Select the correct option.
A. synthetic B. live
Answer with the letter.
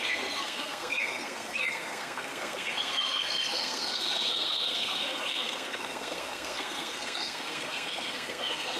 A